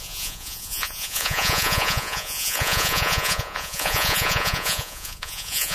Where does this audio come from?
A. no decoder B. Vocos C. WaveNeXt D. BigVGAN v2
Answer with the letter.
B